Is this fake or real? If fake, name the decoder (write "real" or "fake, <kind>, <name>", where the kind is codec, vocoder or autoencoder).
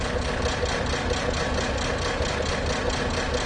real